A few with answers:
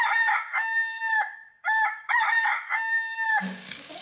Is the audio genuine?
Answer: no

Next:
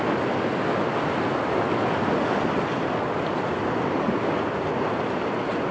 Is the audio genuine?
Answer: yes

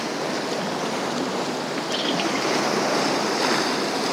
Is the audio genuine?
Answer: yes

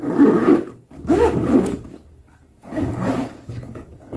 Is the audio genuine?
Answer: no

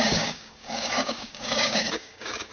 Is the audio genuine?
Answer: no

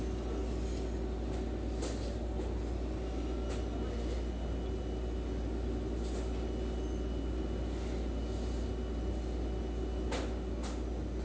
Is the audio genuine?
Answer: yes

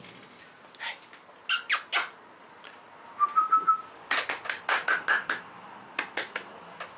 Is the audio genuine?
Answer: yes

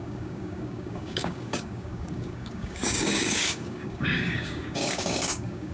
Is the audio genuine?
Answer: no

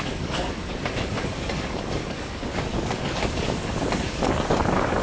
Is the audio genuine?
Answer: no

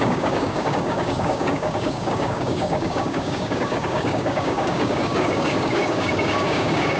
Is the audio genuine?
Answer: no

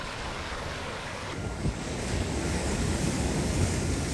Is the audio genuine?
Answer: no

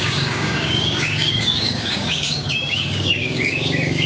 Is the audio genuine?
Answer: no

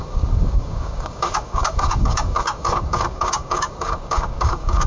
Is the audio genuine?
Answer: no